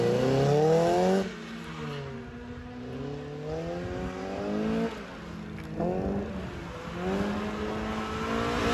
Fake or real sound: real